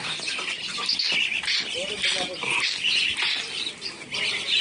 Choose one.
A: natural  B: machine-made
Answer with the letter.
A